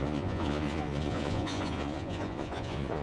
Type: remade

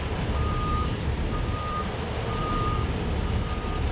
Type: remade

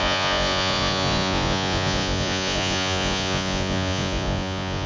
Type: remade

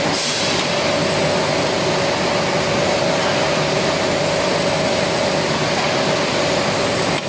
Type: recorded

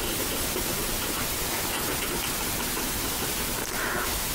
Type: recorded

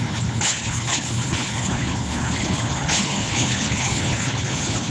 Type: remade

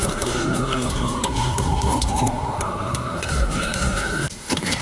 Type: remade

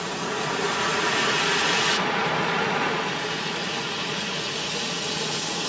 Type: remade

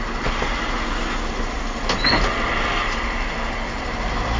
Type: recorded